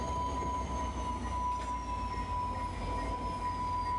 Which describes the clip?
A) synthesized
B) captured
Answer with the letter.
B